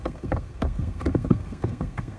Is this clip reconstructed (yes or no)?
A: yes